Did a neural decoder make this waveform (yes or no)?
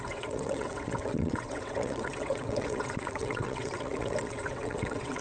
yes